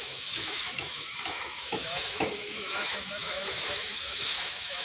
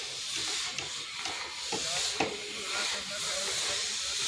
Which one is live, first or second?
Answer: second